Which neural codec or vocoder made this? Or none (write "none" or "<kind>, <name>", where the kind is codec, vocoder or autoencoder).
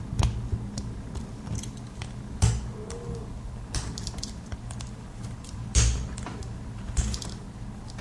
none